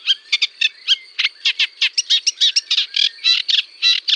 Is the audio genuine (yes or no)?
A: yes